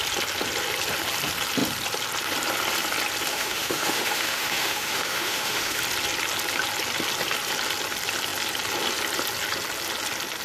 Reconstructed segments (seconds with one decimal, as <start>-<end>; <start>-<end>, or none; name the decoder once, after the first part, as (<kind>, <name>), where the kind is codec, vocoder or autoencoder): 3.3-5.8 (autoencoder, DAC-VAE)